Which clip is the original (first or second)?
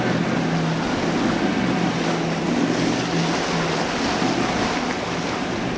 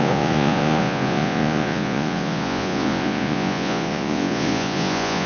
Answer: first